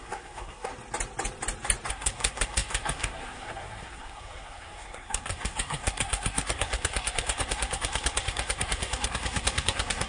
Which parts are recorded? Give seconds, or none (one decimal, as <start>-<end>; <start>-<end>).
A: 0.7-1.9